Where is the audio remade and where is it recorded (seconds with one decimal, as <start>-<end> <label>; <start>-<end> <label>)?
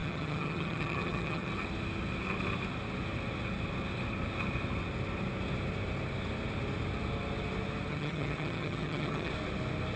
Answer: 0.0-1.5 remade; 1.5-7.9 recorded; 7.9-9.3 remade; 9.3-10.0 recorded